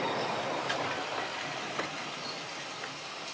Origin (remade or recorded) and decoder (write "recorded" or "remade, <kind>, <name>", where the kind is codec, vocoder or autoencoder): recorded